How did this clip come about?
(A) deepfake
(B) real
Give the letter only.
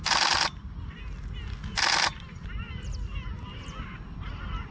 B